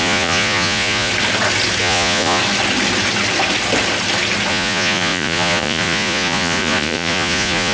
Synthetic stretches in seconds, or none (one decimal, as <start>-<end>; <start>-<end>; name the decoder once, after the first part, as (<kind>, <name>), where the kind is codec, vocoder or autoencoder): 0.0-1.1 (vocoder, Vocos); 1.8-2.4; 4.5-7.7